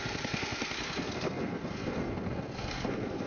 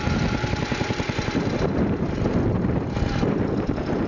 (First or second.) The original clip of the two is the second